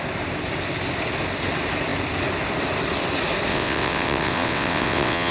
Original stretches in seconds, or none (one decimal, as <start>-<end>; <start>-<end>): 0.0-3.5

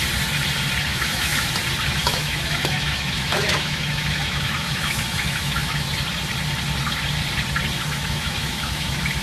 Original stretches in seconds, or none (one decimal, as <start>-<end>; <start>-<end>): 0.0-0.9; 1.5-2.0; 5.9-7.9